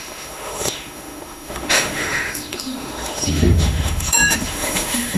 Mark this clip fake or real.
fake